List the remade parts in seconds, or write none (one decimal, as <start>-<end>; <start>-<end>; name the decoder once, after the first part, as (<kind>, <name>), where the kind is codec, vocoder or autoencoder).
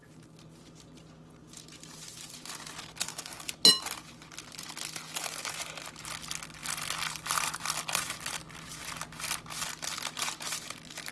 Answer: 3.0-3.5 (codec, DAC)